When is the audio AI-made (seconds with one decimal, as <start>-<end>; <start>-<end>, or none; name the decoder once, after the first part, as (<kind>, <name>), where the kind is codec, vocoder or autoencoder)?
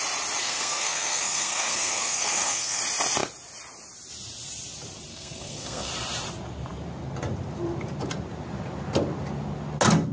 0.4-2.8 (codec, SNAC); 5.1-5.9